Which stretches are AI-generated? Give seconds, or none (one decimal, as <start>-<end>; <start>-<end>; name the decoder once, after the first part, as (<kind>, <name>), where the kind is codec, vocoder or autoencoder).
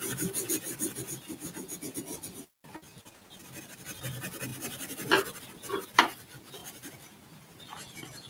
6.6-7.6 (vocoder, BigVGAN v2)